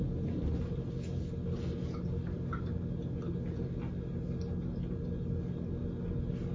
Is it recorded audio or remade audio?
recorded